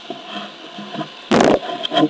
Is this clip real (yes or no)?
yes